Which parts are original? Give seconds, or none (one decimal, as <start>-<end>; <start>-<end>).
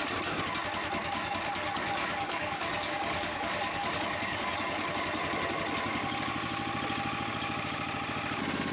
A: 0.0-1.0; 4.9-8.7